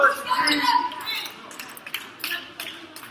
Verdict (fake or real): real